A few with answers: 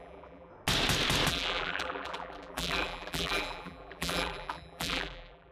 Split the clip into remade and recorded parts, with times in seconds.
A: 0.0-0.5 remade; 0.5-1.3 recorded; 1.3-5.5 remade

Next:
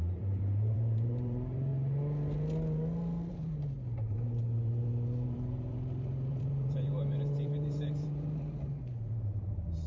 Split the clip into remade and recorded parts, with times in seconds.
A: 0.0-1.7 remade; 1.7-3.3 recorded; 3.3-9.9 remade

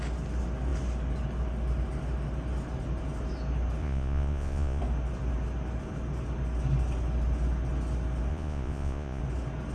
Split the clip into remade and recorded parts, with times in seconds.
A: 0.0-3.8 recorded; 3.8-4.8 remade; 4.8-8.3 recorded; 8.3-9.2 remade; 9.2-9.7 recorded

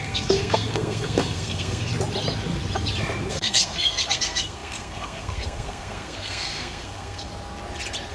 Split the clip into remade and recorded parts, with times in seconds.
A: 0.0-1.9 remade; 1.9-3.3 recorded; 3.3-7.3 remade; 7.3-8.1 recorded